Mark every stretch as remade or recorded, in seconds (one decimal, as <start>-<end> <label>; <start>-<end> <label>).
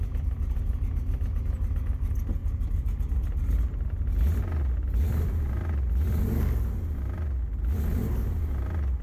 0.0-9.0 recorded